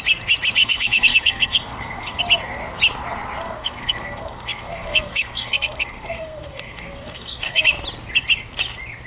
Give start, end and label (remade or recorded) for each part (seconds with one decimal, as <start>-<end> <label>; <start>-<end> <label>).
0.0-0.6 recorded; 0.6-2.2 remade; 2.2-3.4 recorded; 3.4-7.6 remade; 7.6-9.1 recorded